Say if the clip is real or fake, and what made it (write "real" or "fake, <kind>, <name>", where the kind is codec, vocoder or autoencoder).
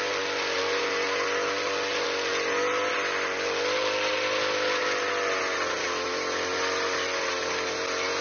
real